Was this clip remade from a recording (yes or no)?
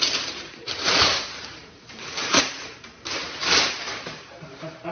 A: yes